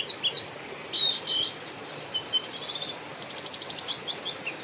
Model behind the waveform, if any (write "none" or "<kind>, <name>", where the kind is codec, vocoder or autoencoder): none